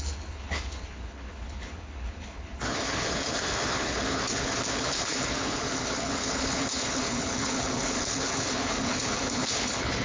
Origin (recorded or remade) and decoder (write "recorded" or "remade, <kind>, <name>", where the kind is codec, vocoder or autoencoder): remade, codec, HILCodec